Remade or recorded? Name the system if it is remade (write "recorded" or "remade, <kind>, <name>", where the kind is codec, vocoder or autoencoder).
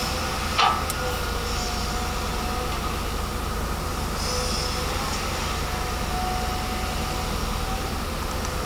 recorded